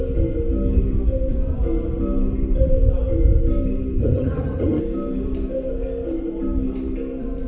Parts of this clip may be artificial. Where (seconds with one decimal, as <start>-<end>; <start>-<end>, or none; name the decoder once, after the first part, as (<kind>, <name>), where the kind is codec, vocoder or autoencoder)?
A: 4.0-4.8 (vocoder, HiFi-GAN)